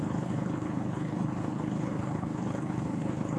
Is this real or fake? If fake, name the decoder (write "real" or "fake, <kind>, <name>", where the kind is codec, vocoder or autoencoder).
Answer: fake, codec, HILCodec